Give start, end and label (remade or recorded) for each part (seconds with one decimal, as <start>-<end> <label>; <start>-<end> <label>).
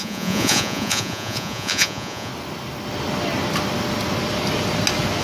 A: 0.0-2.3 remade; 2.3-5.2 recorded